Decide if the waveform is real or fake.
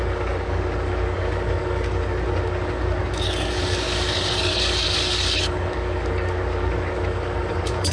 fake